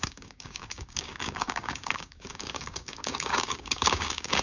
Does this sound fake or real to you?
fake